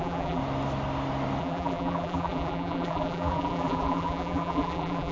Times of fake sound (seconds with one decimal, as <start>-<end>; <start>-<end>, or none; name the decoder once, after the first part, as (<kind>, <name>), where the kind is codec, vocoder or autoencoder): 0.0-0.4 (vocoder, BigVGAN v2); 1.4-5.1

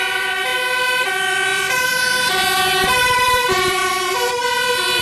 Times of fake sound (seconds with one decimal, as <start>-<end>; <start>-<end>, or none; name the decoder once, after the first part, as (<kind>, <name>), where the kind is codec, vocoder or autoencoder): 0.0-0.5 (vocoder, BigVGAN v2); 1.0-5.0

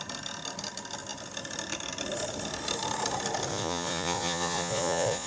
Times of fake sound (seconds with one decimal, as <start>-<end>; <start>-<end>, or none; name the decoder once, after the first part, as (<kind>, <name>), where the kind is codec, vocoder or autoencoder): 3.5-5.3 (vocoder, Vocos)

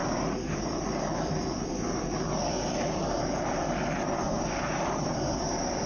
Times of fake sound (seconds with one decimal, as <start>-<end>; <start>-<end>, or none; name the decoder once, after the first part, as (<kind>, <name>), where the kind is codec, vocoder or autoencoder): 0.0-5.9 (vocoder, BigVGAN v2)